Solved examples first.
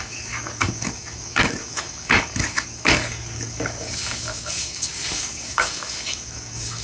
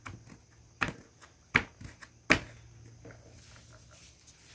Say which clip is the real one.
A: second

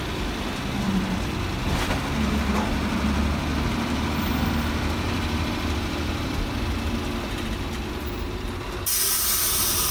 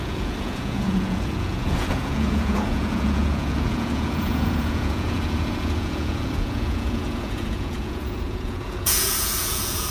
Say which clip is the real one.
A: first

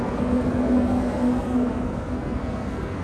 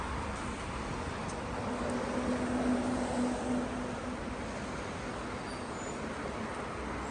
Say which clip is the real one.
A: second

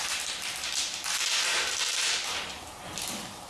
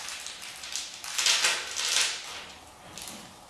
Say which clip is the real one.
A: second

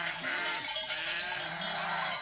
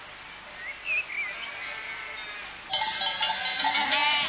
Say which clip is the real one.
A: second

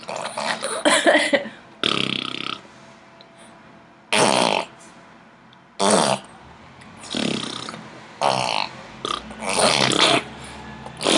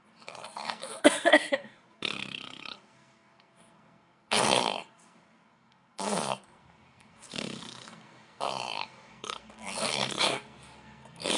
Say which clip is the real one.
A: first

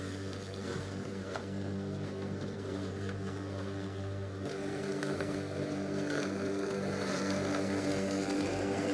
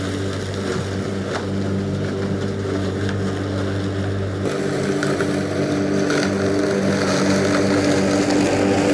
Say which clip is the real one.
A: second